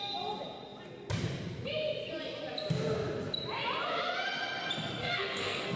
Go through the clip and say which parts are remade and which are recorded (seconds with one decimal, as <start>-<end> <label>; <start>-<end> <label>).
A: 0.0-5.0 recorded; 5.0-5.8 remade